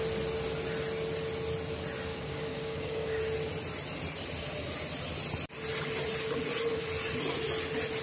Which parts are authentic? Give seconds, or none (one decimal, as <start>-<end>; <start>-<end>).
0.0-2.1; 3.2-8.0

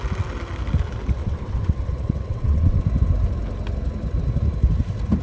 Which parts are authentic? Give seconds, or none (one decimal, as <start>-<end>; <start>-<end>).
0.0-1.2; 2.8-5.2

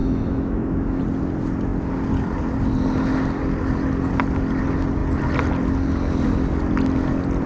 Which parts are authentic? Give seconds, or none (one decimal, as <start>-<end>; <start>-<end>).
1.0-7.5

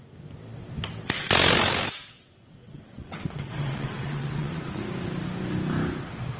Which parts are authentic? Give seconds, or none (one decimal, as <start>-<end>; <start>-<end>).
0.0-2.0; 4.8-6.4

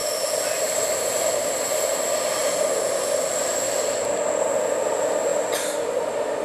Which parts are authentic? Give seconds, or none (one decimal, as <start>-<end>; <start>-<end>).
0.0-6.4

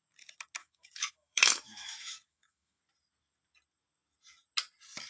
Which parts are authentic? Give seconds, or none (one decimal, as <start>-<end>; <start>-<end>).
0.0-0.6; 2.8-5.1

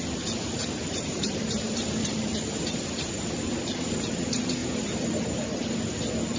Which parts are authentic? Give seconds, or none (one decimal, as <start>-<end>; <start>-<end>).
0.0-0.6; 3.1-4.6; 5.2-6.4

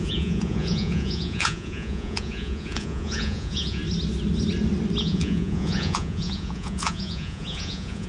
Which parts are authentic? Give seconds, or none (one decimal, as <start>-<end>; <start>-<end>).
3.8-5.0